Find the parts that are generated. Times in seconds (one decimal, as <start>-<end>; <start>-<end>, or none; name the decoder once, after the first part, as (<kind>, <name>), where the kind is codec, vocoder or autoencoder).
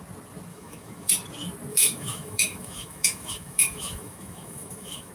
0.5-1.1 (autoencoder, DAC-VAE); 1.7-5.1